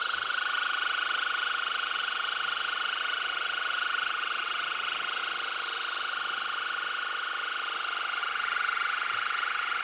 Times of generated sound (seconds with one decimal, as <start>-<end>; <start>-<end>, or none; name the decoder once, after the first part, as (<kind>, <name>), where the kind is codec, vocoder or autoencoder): 0.0-5.2 (vocoder, WaveNeXt); 8.2-9.8